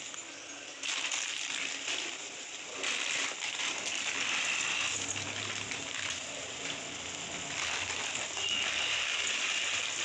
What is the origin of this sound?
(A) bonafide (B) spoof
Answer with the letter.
A